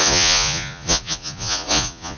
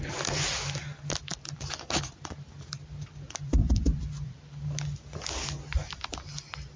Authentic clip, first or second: second